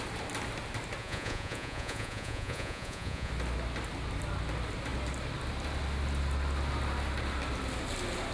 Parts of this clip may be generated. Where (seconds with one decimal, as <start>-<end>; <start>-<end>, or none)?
1.0-3.3